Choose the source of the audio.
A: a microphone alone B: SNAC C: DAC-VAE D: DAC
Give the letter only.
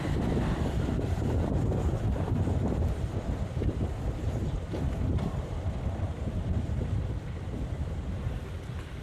A